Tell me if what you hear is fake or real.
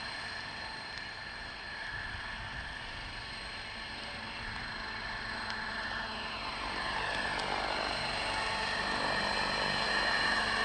real